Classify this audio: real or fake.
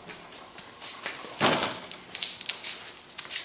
real